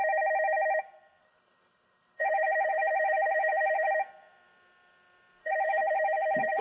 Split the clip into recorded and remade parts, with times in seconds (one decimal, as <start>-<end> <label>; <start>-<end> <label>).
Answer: 0.0-1.2 recorded; 1.2-3.9 remade; 3.9-5.4 recorded; 5.4-6.6 remade

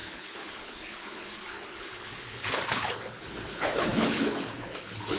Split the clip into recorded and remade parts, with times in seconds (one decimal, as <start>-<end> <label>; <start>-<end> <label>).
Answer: 0.0-5.2 remade

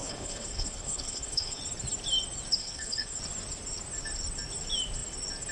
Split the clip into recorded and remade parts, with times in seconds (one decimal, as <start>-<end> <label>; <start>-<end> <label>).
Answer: 0.0-1.6 remade; 1.6-2.6 recorded; 2.6-3.2 remade; 3.2-5.5 recorded

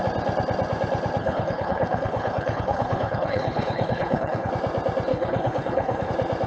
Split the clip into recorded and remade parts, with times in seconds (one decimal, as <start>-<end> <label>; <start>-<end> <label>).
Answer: 0.0-1.2 recorded; 1.2-4.5 remade; 4.5-5.1 recorded; 5.1-6.1 remade; 6.1-6.5 recorded

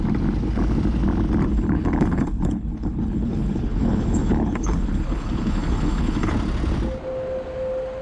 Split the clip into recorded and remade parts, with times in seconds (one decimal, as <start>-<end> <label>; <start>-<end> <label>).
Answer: 0.0-1.5 recorded; 1.5-6.3 remade; 6.3-8.0 recorded

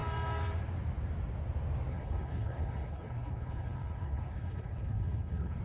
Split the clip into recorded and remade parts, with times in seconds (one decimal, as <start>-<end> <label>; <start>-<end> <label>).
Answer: 0.0-1.9 recorded; 1.9-5.6 remade

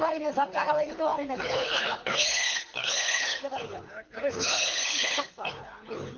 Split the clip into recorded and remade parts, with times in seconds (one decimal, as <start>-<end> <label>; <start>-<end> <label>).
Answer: 0.0-6.2 remade

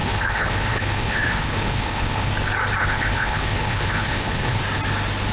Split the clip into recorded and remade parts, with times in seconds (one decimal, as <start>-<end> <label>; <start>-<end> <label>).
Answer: 0.0-2.3 remade; 2.3-2.8 recorded; 2.8-4.6 remade; 4.6-5.3 recorded